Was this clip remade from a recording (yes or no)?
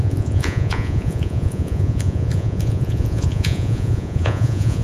yes